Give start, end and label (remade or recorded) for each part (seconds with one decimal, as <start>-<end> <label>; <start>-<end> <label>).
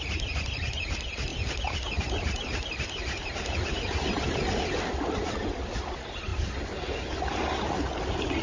0.0-1.3 recorded; 1.3-4.6 remade; 4.6-8.4 recorded